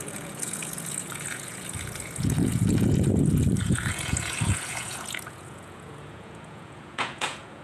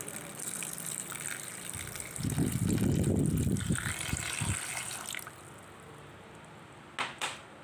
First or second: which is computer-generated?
first